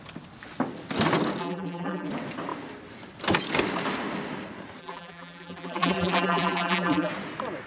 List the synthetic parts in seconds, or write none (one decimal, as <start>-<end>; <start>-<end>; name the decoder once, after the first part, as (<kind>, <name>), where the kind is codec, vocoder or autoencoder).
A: 1.4-2.1 (vocoder, BigVGAN v2); 4.8-7.1